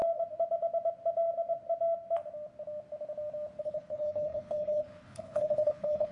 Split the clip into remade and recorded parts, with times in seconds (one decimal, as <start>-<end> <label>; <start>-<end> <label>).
0.0-3.6 recorded; 3.6-6.1 remade